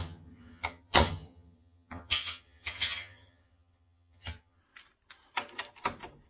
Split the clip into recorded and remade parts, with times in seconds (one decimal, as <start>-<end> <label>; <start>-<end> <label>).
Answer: 0.0-4.6 remade; 4.6-6.3 recorded